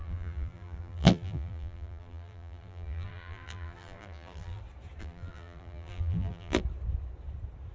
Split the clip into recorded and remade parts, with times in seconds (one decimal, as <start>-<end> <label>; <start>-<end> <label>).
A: 0.0-4.6 remade; 4.6-5.0 recorded; 5.0-6.6 remade; 6.6-7.7 recorded